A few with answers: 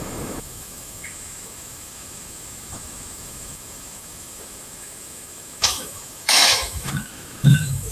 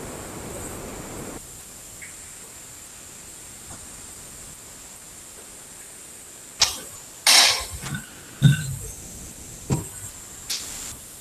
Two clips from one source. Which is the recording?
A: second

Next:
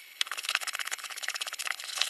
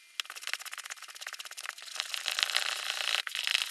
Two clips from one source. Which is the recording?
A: second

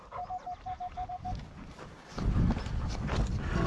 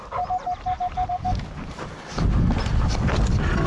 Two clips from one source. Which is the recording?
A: second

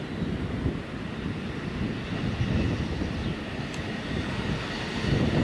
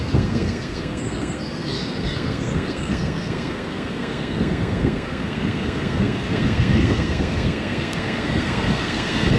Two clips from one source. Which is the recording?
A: first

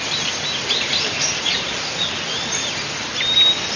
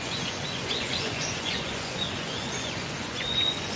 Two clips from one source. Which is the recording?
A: first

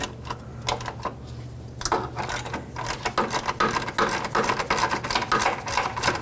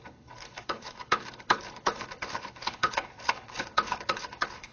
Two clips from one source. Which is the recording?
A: first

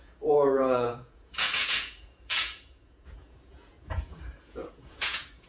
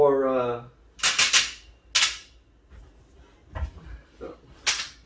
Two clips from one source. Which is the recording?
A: second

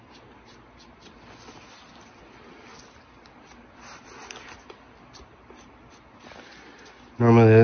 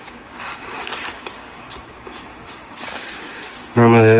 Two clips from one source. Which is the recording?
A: first